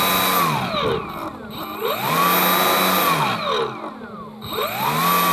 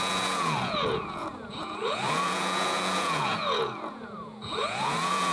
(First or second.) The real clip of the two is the first